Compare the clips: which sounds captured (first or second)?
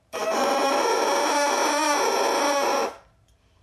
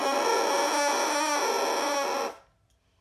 second